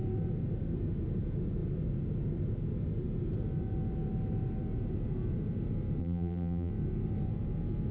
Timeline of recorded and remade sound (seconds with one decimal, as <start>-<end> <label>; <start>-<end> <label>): 0.0-6.0 recorded; 6.0-6.7 remade; 6.7-7.9 recorded